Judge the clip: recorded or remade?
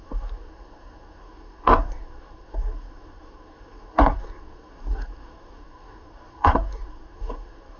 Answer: remade